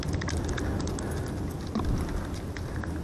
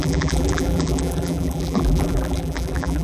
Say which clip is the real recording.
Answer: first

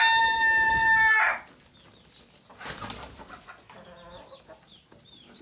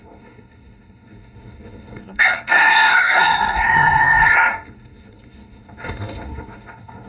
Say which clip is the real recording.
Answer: first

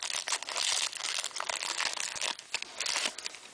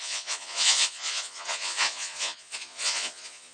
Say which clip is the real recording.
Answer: first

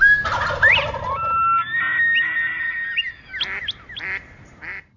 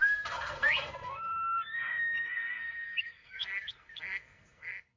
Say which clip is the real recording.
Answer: first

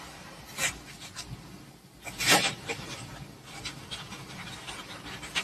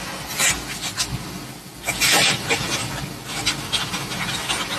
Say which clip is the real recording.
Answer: second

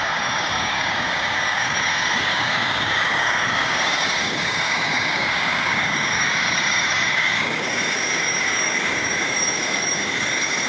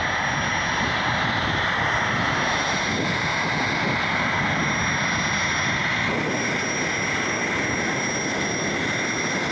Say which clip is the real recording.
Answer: second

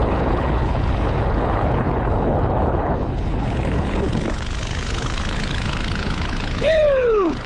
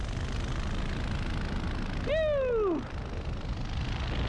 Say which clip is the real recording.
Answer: second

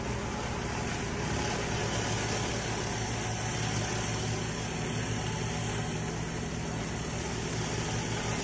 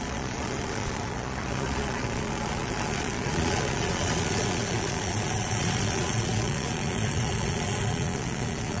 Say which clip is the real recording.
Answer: first